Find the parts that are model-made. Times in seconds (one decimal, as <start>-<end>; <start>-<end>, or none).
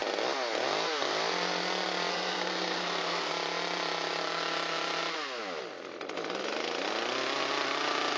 2.1-3.3